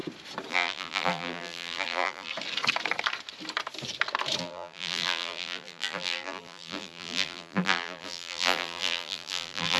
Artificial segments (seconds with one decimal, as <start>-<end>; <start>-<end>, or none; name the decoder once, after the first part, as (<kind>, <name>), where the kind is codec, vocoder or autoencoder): 0.5-2.3 (vocoder, BigVGAN v2); 4.4-9.8

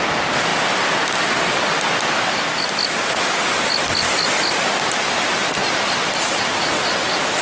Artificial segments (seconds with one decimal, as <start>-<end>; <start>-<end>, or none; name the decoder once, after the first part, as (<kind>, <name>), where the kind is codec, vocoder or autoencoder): none

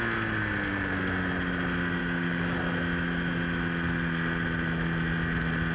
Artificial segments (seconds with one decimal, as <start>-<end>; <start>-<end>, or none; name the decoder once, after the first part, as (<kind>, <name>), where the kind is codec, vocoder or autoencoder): 2.0-2.6 (codec, DAC)

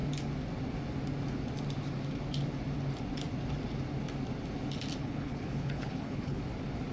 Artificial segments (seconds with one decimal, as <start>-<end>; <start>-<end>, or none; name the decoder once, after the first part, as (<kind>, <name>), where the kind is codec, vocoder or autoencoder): 5.0-6.4 (codec, HILCodec)

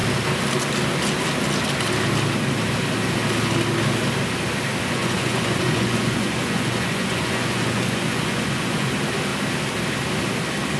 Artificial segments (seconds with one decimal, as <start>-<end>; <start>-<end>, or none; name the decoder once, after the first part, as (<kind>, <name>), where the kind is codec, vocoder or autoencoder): 4.8-8.9 (vocoder, Vocos)

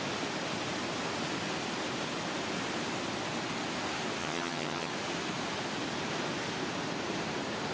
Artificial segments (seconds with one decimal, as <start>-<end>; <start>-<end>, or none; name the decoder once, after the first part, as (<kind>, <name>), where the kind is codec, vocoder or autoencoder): 4.2-4.9 (vocoder, HiFi-GAN)

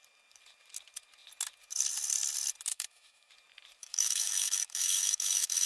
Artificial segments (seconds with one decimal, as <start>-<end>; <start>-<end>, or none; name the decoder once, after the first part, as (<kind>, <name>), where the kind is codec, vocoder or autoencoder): 2.7-3.3 (autoencoder, DAC-VAE); 3.8-5.7